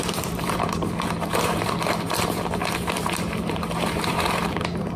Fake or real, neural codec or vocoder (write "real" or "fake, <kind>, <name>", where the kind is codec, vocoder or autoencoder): fake, vocoder, BigVGAN v2